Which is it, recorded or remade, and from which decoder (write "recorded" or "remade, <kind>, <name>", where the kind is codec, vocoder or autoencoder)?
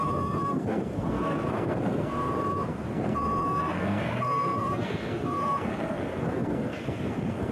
remade, codec, SNAC